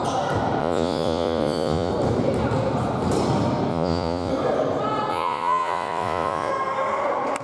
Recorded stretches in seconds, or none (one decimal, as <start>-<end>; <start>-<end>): 0.0-0.6; 1.9-3.7; 4.3-5.1; 6.5-7.4